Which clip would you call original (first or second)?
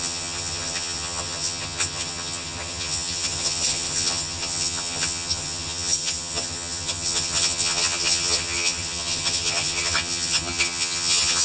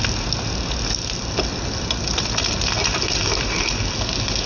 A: second